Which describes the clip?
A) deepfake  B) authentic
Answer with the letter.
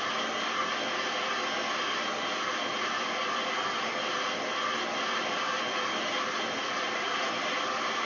B